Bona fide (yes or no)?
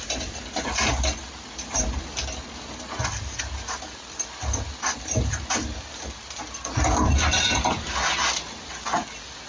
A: yes